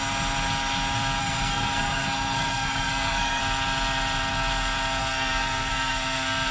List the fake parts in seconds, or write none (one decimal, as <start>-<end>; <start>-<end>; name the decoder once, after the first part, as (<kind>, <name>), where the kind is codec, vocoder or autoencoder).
1.2-3.4 (codec, SNAC); 5.0-6.5